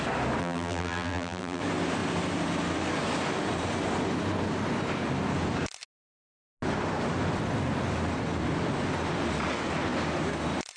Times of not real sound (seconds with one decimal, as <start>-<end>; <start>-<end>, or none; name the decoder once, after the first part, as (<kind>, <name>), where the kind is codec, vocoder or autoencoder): 0.4-1.6 (vocoder, BigVGAN v2)